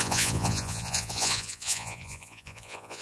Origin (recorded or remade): remade